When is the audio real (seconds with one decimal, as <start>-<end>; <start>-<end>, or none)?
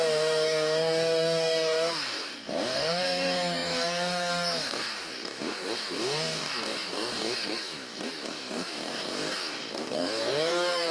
none